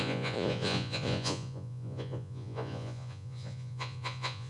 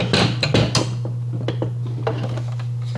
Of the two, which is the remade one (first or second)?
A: first